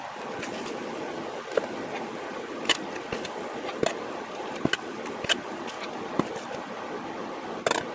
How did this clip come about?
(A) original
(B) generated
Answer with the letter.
A